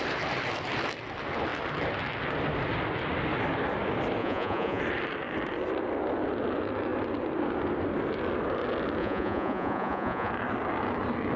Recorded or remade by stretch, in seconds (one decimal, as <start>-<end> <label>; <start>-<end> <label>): 0.0-4.2 recorded; 4.2-4.8 remade; 4.8-9.0 recorded; 9.0-10.3 remade; 10.3-11.4 recorded